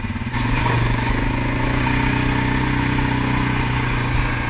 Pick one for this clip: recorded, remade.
remade